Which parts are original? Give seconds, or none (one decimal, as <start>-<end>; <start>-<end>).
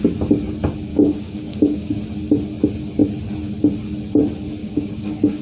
0.0-0.9; 2.0-4.6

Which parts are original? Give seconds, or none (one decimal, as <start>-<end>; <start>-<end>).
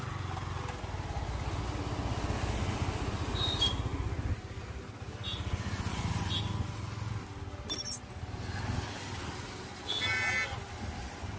0.0-11.4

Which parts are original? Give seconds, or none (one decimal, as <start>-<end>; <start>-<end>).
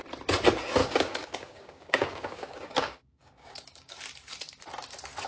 0.0-0.8; 4.0-5.3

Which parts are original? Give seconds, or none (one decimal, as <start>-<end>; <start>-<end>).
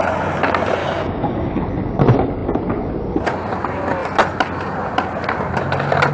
0.0-0.8; 1.5-6.1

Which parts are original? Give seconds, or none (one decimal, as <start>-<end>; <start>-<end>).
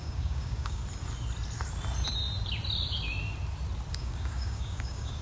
0.8-3.9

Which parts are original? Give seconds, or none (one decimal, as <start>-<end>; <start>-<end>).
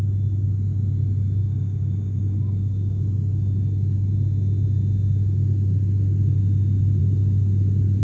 0.0-1.4; 3.0-8.0